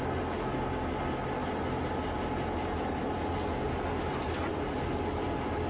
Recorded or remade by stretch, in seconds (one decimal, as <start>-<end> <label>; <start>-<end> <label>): 0.0-5.7 recorded

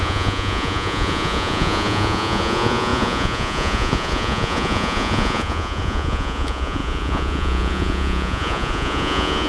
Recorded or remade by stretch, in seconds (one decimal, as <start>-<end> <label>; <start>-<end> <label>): 0.0-9.5 remade